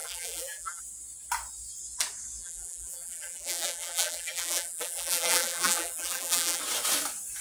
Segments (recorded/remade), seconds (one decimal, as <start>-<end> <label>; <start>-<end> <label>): 0.0-0.8 remade; 0.8-2.4 recorded; 2.4-6.6 remade; 6.6-7.4 recorded